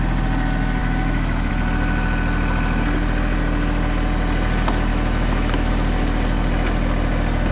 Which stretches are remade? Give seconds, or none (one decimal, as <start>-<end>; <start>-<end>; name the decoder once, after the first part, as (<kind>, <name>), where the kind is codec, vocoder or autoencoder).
0.8-1.5 (autoencoder, DAC-VAE); 4.9-5.7